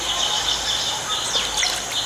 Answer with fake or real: real